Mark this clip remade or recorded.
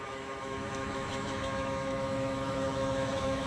remade